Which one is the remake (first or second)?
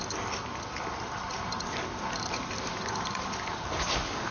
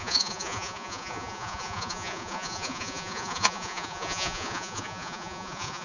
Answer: second